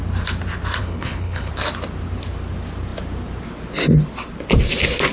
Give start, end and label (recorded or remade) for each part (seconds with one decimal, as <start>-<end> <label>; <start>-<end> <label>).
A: 0.0-0.8 recorded; 0.8-1.5 remade; 1.5-5.1 recorded